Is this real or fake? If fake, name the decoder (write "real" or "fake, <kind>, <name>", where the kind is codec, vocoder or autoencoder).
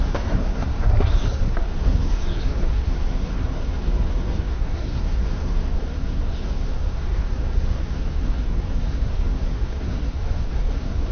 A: fake, codec, SNAC